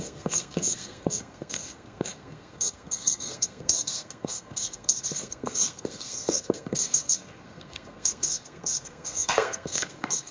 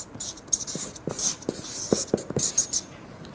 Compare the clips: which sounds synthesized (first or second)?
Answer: first